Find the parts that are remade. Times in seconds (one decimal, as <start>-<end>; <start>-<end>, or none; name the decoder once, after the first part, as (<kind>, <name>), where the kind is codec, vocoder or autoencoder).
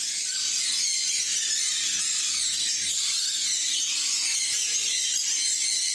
none